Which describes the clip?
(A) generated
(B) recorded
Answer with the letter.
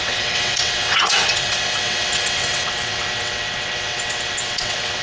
A